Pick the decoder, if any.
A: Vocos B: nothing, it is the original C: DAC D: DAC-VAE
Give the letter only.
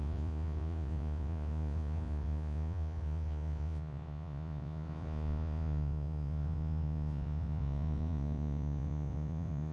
A